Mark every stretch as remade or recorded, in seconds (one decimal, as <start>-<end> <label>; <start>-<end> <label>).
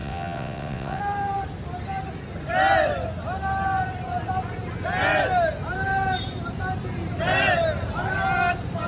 0.0-1.0 remade; 1.0-8.9 recorded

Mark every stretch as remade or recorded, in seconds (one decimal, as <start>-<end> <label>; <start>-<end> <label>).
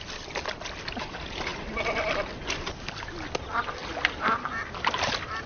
0.0-5.5 recorded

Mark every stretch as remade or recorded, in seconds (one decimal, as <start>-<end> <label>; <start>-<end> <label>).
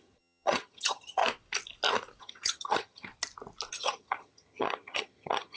0.0-1.2 remade; 1.2-2.2 recorded; 2.2-3.1 remade; 3.1-3.7 recorded; 3.7-5.6 remade